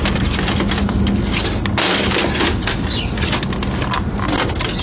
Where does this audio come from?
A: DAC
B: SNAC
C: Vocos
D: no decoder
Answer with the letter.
D